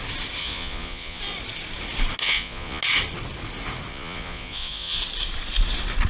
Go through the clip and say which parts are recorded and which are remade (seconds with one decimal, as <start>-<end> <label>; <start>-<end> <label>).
0.0-0.4 recorded; 0.4-1.2 remade; 1.2-2.2 recorded; 2.2-2.8 remade; 2.8-3.9 recorded; 3.9-5.0 remade; 5.0-6.1 recorded